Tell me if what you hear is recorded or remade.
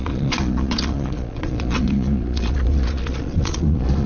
remade